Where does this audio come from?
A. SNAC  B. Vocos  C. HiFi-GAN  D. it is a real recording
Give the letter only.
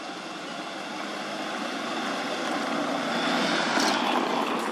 D